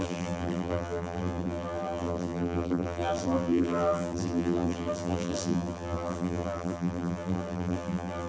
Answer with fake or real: fake